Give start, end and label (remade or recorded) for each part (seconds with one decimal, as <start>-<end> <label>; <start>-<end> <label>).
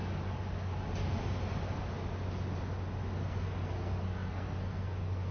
0.0-3.2 recorded; 3.2-5.3 remade